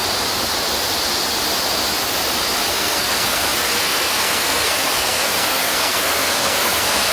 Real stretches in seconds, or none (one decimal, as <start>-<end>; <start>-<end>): 0.0-2.7